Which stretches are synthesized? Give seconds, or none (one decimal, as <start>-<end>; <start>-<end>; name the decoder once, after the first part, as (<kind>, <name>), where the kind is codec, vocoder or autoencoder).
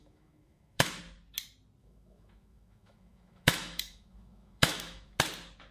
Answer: 0.0-1.0 (autoencoder, DAC-VAE); 1.8-5.2